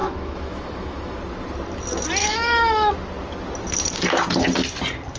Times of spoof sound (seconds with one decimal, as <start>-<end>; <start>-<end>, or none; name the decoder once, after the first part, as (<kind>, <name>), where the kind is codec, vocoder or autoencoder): 0.0-1.2 (autoencoder, DAC-VAE); 2.2-2.9